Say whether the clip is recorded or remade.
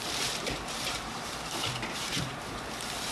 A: remade